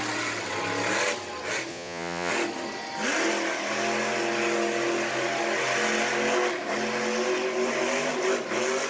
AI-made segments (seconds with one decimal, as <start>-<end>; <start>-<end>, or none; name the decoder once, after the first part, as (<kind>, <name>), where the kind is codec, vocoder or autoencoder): 1.7-2.3 (vocoder, Vocos)